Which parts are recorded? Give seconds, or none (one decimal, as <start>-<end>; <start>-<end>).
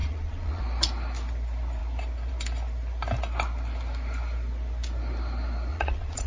0.6-5.7